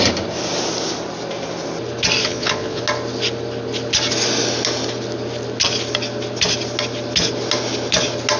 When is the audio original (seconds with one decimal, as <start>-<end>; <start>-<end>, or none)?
0.0-2.2; 2.8-8.4